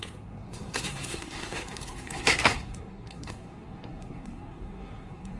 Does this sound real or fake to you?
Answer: fake